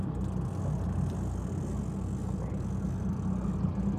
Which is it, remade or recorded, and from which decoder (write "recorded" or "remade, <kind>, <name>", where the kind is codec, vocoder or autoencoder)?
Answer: recorded